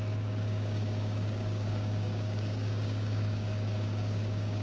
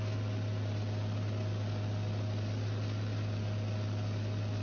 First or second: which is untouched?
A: second